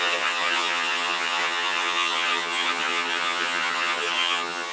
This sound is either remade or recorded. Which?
remade